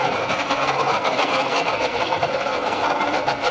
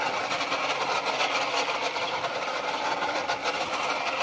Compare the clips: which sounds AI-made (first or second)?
first